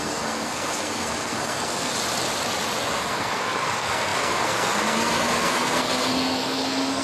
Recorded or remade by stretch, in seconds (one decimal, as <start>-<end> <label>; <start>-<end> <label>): 0.0-1.9 remade; 1.9-2.9 recorded; 2.9-7.0 remade